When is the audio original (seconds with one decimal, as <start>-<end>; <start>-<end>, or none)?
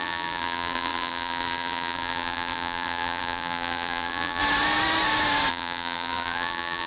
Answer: 4.4-5.5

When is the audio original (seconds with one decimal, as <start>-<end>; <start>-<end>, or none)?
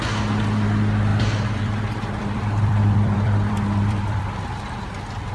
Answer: 0.0-1.1; 4.3-5.3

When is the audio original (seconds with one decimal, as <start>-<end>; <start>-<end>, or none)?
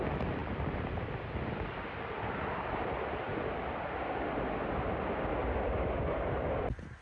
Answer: 3.3-5.4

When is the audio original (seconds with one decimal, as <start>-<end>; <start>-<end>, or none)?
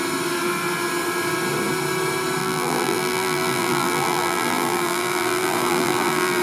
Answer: 0.0-2.4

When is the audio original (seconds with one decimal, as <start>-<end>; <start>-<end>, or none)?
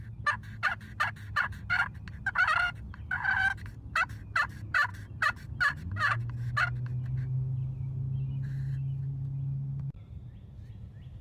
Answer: 0.0-4.9; 5.4-11.2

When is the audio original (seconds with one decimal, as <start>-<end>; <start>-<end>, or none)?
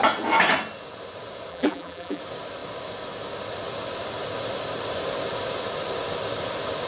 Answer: 0.0-1.5; 2.2-6.9